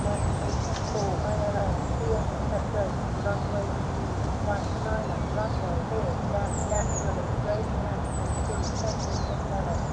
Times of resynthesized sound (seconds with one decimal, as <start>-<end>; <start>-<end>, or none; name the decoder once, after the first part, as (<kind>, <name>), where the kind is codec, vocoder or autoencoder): 6.6-7.7 (vocoder, Vocos)